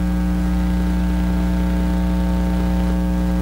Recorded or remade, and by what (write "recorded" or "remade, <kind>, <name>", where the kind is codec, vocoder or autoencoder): recorded